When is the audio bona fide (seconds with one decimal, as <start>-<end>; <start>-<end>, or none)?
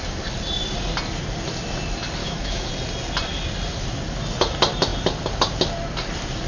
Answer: 0.0-2.2; 2.7-6.5